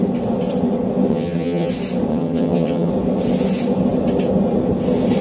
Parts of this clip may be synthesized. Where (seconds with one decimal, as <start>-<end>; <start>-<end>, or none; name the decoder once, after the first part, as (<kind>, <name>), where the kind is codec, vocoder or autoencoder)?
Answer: 1.1-1.7 (vocoder, HiFi-GAN); 2.1-2.9